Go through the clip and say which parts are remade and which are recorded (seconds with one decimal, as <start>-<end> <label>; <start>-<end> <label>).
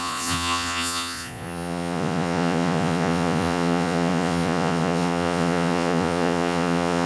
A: 0.0-7.1 remade